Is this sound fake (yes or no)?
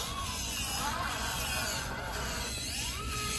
yes